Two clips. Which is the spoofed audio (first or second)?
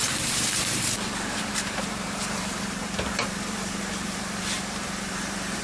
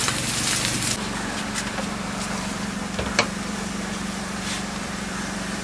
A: first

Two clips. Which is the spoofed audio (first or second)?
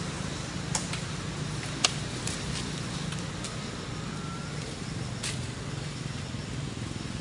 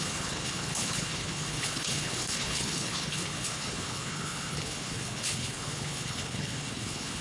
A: second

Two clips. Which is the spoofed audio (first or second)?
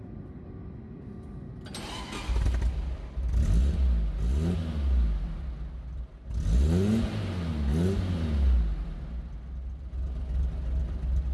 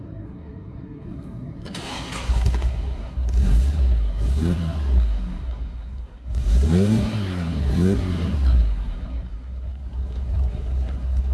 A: second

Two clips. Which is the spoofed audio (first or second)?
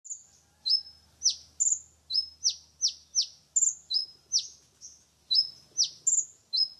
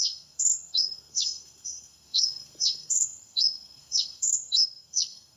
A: second